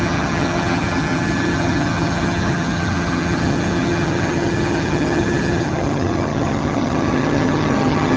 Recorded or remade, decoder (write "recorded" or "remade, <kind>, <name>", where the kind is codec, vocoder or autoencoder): remade, vocoder, HiFi-GAN